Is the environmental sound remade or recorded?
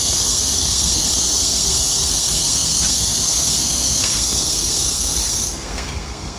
remade